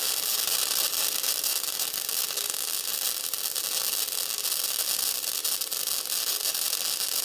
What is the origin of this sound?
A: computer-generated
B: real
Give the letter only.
B